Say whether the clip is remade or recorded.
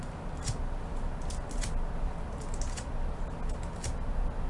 recorded